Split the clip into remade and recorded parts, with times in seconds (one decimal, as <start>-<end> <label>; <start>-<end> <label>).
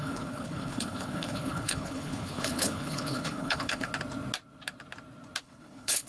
0.0-3.9 remade; 3.9-5.4 recorded; 5.4-6.1 remade